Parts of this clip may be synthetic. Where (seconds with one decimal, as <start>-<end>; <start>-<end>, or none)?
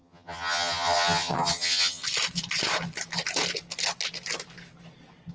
0.0-2.0